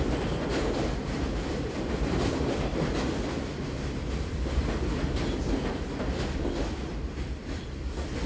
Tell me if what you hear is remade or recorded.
remade